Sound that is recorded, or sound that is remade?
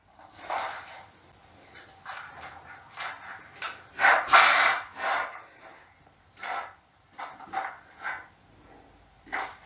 recorded